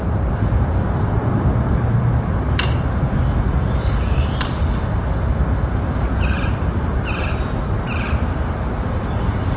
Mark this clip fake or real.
fake